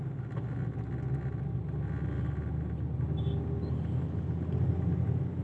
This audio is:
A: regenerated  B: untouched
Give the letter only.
B